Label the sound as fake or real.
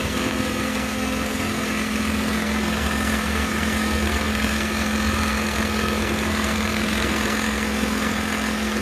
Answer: fake